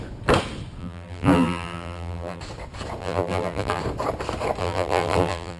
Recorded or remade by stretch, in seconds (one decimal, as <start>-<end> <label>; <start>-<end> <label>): 0.0-0.8 recorded; 0.8-2.4 remade; 2.4-3.0 recorded; 3.0-3.8 remade; 3.8-4.6 recorded; 4.6-5.6 remade